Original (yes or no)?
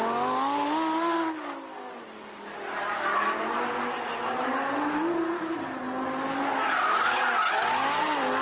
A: yes